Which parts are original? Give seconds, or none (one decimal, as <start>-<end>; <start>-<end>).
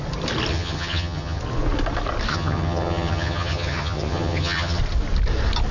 0.0-0.5; 1.4-2.3; 4.8-5.7